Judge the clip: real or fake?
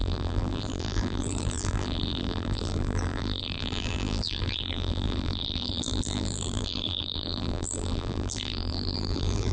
fake